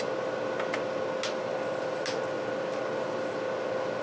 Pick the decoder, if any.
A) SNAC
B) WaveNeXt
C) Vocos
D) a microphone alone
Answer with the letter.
D